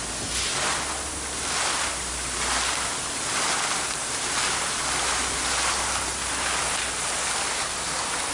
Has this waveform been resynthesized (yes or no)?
no